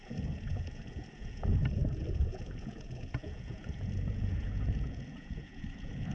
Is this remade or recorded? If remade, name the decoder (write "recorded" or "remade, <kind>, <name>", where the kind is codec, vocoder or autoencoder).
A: remade, vocoder, Vocos